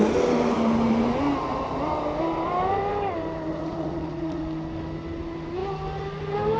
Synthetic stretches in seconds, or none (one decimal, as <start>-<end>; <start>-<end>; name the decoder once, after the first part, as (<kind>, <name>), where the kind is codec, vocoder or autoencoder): 3.5-4.4 (vocoder, Vocos)